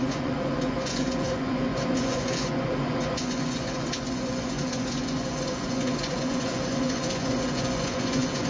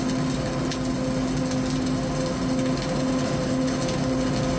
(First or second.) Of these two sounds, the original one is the second